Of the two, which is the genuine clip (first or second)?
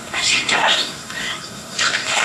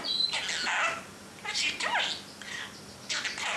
second